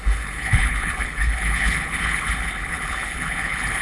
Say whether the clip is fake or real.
fake